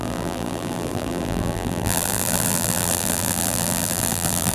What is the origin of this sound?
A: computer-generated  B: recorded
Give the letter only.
A